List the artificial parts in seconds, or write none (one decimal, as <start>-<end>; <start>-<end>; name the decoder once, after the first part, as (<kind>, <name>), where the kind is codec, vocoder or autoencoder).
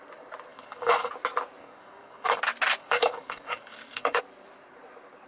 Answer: 0.5-1.1 (codec, DAC); 1.6-2.4; 2.8-4.2